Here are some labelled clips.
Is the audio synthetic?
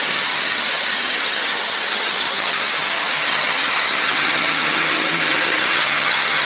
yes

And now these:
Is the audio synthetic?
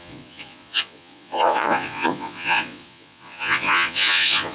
yes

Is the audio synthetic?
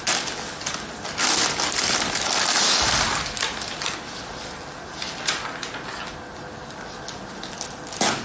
no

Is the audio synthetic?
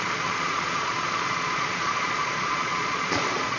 yes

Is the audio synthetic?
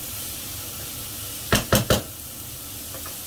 no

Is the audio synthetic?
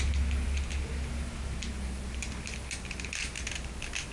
no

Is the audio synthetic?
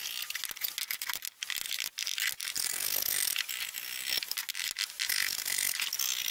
no